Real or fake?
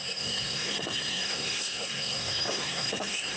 fake